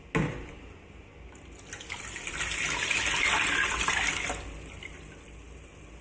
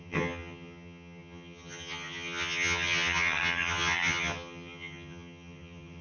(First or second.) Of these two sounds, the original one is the first